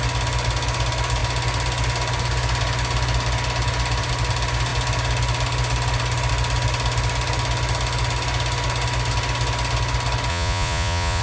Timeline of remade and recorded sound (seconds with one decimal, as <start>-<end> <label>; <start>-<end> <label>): 0.0-10.3 recorded; 10.3-11.2 remade